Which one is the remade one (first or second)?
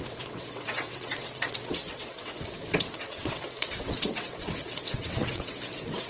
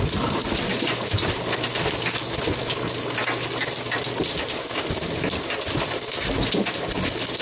first